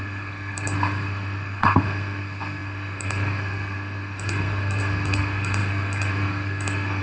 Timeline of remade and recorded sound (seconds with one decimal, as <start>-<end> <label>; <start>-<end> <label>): 0.0-7.0 remade